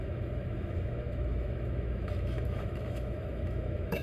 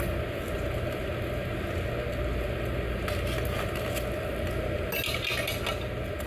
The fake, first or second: first